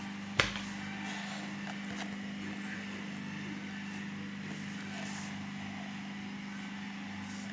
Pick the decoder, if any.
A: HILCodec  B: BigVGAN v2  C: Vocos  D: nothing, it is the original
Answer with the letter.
D